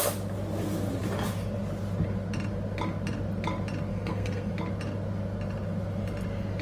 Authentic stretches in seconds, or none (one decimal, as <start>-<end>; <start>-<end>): 0.0-3.9; 4.5-6.6